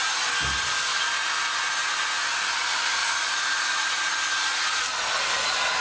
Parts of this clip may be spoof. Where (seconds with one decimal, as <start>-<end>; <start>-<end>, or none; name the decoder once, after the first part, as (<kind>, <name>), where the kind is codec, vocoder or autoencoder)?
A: none